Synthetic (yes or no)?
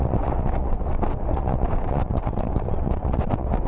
yes